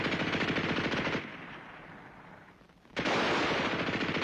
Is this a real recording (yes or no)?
no